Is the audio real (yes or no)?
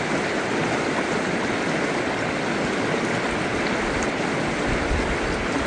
yes